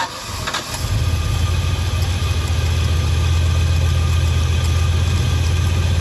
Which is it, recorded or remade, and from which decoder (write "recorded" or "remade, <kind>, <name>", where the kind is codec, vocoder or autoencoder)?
recorded